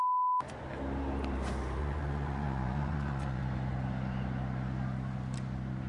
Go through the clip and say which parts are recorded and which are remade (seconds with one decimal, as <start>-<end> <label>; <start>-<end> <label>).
0.0-1.8 recorded; 1.8-3.4 remade; 3.4-5.9 recorded